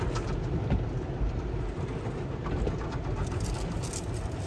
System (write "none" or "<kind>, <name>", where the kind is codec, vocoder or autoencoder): none